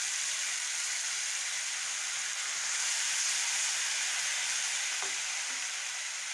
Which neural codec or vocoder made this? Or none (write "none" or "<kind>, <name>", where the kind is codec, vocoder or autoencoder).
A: vocoder, BigVGAN v2